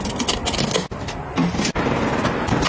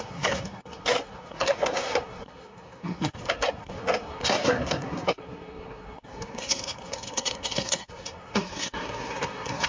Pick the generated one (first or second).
second